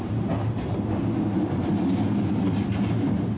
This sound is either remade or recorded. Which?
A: recorded